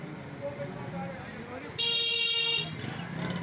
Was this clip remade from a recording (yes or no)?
no